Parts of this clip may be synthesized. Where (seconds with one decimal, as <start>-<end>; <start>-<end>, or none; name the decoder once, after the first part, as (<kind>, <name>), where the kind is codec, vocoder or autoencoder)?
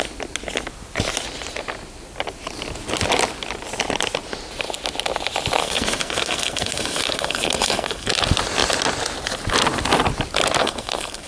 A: 5.6-8.1 (codec, SNAC); 10.6-11.3